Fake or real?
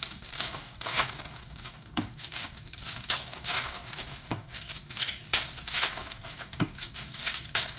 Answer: fake